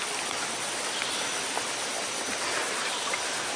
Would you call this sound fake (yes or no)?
no